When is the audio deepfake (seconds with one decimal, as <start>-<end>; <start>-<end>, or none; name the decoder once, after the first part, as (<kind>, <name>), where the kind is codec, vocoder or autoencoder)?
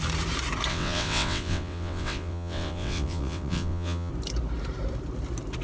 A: 0.7-4.1 (vocoder, WaveNeXt)